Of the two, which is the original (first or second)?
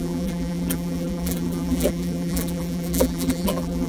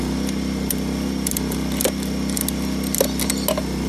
second